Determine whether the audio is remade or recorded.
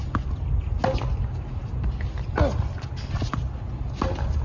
recorded